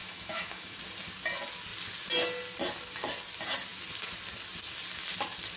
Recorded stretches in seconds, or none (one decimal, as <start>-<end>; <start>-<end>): 0.8-5.6